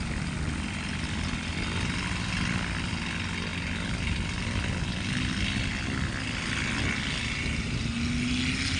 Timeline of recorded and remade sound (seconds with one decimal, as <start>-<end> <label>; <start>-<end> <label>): 0.0-8.8 recorded